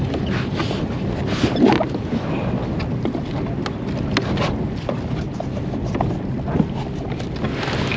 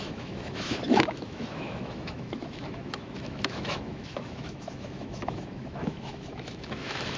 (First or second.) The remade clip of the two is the second